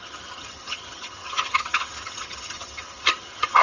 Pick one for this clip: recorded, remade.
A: remade